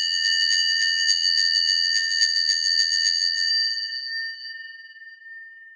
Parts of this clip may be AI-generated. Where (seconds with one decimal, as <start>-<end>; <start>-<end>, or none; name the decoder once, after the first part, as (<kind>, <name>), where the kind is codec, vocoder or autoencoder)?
0.0-3.5 (vocoder, BigVGAN v2)